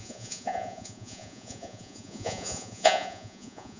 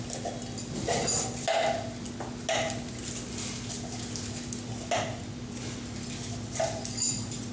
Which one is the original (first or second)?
second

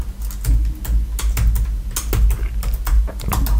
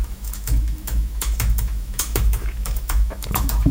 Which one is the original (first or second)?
first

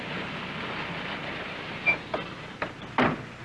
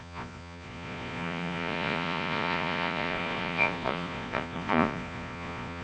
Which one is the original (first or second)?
first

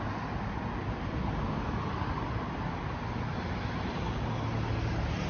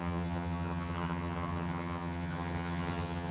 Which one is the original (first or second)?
first